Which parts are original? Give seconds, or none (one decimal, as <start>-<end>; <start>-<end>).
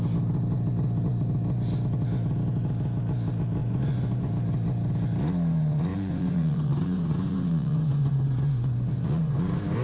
0.0-3.6; 4.3-5.9; 9.4-9.8